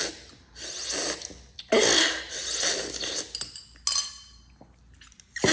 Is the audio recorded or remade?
recorded